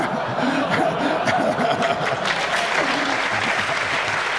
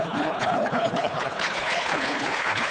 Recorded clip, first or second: first